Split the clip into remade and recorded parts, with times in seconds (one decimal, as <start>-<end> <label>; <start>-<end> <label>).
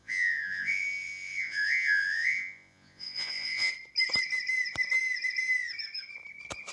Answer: 0.0-3.7 remade; 3.7-6.7 recorded